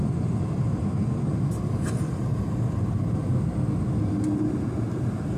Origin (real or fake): real